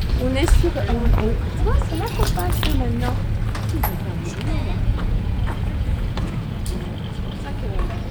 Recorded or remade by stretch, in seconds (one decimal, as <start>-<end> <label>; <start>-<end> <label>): 0.0-1.0 recorded; 1.0-1.6 remade; 1.6-4.6 recorded; 4.6-6.6 remade; 6.6-8.1 recorded